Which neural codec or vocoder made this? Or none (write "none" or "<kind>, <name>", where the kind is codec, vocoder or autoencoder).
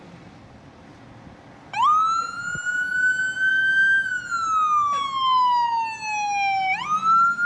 none